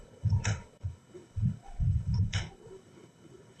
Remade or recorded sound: remade